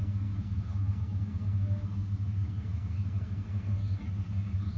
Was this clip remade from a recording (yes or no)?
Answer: yes